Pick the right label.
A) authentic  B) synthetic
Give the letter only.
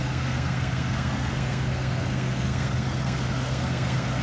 B